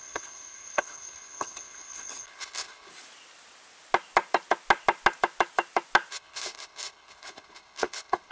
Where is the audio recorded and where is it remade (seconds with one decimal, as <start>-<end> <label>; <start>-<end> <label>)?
0.0-2.9 remade; 2.9-6.1 recorded; 6.1-8.3 remade